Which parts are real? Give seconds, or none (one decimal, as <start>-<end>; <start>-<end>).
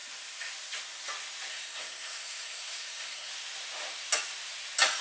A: 0.0-1.5; 3.3-5.0